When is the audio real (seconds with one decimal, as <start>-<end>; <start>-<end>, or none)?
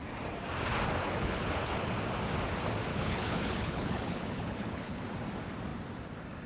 0.0-1.0; 1.9-2.9; 5.0-6.5